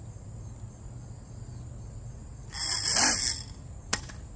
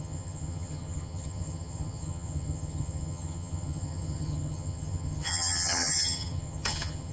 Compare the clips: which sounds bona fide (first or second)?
first